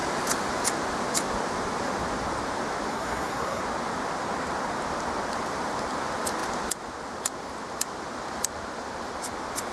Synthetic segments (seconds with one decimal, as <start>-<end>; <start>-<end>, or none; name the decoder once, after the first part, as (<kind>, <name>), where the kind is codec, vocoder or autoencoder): 2.9-3.6 (codec, SNAC)